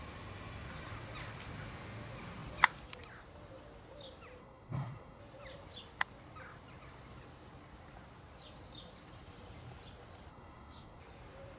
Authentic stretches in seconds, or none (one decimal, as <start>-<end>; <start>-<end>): 0.0-4.4; 5.2-10.3; 11.0-11.6